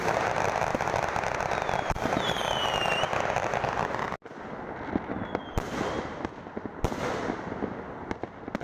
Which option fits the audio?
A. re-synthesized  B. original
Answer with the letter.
B